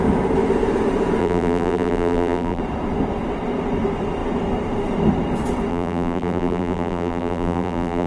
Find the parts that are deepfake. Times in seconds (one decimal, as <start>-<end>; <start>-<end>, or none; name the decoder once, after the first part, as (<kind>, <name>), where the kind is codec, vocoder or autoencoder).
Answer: 1.2-2.6 (vocoder, BigVGAN v2); 5.7-8.1